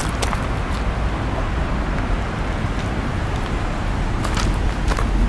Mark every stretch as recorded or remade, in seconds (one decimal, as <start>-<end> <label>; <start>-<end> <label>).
0.0-5.3 recorded